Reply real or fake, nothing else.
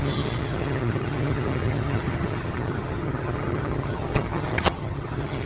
fake